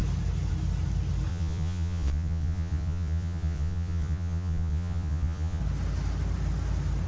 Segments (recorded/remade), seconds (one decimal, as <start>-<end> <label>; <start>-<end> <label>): 0.0-1.3 recorded; 1.3-5.6 remade; 5.6-7.1 recorded